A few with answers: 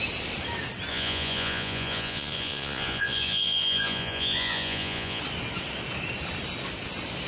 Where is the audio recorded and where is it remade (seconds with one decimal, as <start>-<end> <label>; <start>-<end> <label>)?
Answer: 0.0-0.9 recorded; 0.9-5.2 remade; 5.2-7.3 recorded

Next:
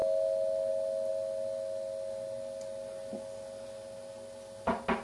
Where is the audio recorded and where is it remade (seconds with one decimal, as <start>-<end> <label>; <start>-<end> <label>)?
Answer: 0.0-5.0 recorded

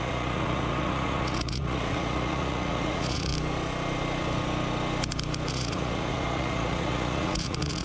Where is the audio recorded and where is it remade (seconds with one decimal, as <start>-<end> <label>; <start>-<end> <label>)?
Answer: 0.0-3.3 remade; 3.3-5.5 recorded; 5.5-7.8 remade

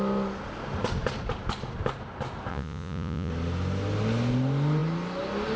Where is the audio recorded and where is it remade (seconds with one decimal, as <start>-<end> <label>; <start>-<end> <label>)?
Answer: 0.0-2.5 recorded; 2.5-3.3 remade; 3.3-5.6 recorded

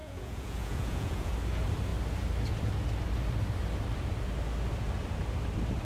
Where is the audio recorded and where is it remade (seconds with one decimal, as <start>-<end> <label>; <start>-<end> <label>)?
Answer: 0.0-1.3 remade; 1.3-5.8 recorded

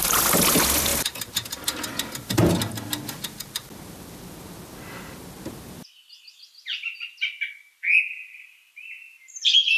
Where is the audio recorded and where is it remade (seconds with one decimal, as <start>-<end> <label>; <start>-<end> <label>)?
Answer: 0.0-9.8 recorded

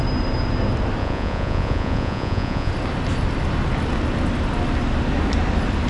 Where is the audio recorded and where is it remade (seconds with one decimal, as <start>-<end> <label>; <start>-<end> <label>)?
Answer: 0.0-1.0 recorded; 1.0-2.7 remade; 2.7-5.9 recorded